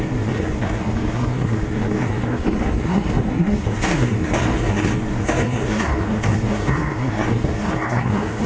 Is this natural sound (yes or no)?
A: no